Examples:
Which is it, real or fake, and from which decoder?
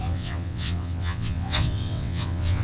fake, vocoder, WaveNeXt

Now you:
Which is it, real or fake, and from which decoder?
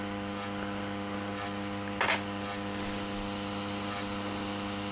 real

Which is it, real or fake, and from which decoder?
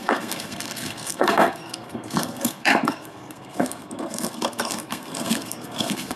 fake, codec, SNAC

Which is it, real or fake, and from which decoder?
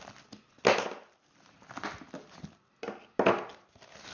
real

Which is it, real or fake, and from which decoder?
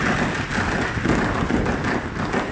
real